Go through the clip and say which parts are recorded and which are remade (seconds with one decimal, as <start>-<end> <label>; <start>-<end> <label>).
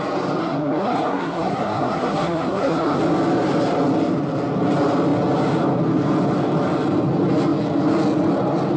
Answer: 0.0-0.4 recorded; 0.4-3.0 remade; 3.0-8.8 recorded